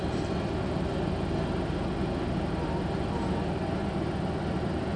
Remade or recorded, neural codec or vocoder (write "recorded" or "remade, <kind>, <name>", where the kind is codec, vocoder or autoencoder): recorded